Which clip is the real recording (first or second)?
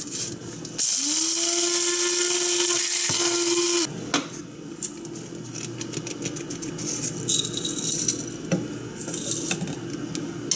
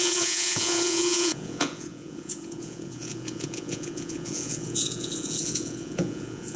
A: first